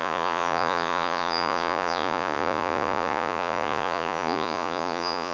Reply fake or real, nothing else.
fake